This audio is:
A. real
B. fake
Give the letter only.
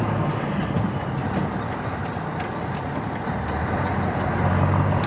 A